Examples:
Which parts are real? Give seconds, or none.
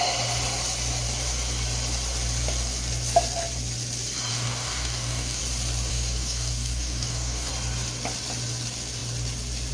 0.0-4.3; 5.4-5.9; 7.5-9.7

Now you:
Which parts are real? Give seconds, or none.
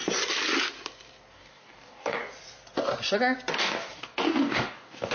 0.0-1.3; 2.2-3.5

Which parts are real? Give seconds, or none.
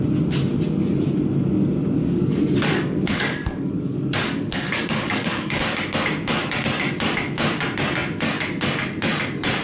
0.0-2.0; 5.8-9.6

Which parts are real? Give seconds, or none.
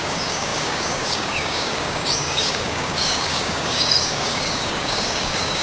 none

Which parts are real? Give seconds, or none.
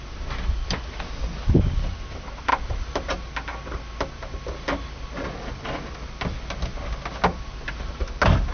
0.0-8.5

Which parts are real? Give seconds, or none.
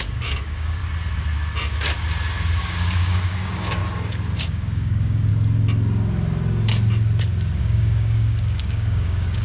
0.8-2.6; 3.8-4.4; 5.3-7.6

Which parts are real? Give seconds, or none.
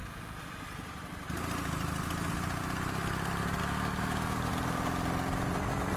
0.0-3.6; 4.5-6.0